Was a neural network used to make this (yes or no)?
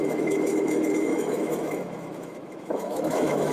yes